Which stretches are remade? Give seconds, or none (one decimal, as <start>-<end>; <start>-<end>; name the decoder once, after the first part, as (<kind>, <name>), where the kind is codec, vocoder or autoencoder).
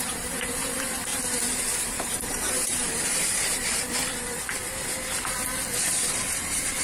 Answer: 0.0-4.4 (vocoder, BigVGAN v2); 5.9-6.8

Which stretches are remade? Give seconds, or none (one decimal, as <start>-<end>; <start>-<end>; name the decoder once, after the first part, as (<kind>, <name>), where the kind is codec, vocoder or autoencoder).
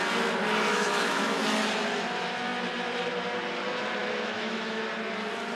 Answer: 0.7-1.4 (autoencoder, DAC-VAE); 4.0-4.8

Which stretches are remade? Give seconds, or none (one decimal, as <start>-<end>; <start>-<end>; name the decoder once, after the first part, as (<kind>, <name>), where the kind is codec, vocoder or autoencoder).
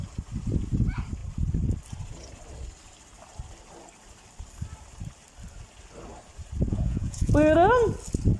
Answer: 6.7-7.3 (vocoder, Vocos)